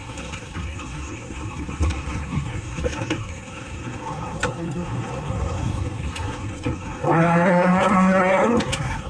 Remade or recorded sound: remade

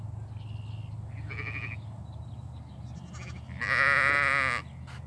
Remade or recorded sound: recorded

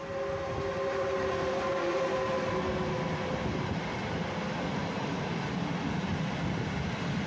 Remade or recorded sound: recorded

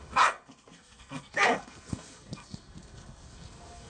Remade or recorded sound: remade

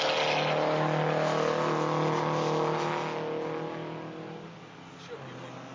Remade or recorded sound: recorded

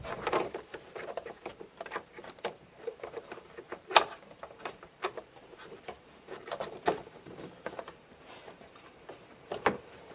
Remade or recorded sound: remade